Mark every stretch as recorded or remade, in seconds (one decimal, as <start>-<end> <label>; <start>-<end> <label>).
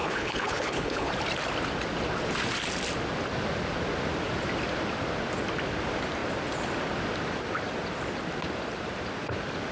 0.0-1.1 remade; 1.1-9.7 recorded